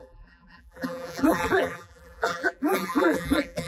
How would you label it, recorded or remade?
remade